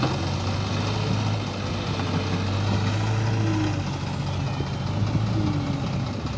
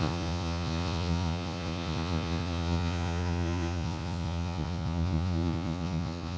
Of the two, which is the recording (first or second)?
first